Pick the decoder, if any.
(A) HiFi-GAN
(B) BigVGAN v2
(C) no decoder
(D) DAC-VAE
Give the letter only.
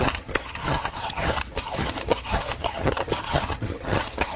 A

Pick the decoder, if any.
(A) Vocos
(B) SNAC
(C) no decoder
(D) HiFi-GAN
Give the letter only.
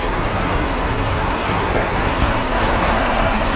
B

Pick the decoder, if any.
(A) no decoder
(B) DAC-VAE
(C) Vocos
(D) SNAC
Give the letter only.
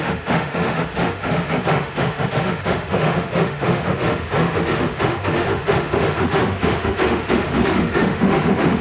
B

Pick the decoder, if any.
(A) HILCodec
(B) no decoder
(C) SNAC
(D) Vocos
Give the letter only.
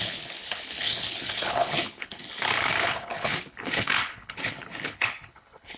A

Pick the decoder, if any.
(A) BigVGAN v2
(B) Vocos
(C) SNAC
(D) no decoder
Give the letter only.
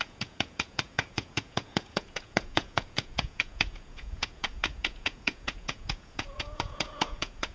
B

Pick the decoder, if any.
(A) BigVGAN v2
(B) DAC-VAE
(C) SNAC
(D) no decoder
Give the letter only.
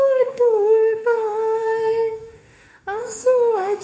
B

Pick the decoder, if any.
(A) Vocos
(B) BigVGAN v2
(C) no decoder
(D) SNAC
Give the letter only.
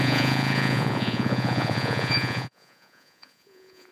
A